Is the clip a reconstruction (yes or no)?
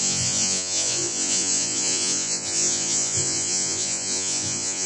yes